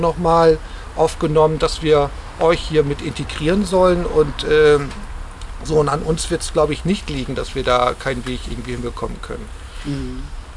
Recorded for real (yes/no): yes